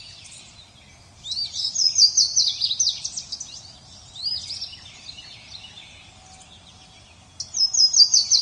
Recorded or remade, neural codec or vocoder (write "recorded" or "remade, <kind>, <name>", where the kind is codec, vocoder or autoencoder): recorded